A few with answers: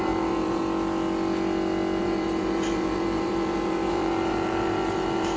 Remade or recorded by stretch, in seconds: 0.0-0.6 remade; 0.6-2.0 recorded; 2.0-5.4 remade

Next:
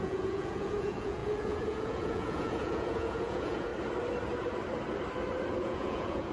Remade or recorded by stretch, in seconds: 0.0-3.7 remade; 3.7-5.5 recorded; 5.5-6.3 remade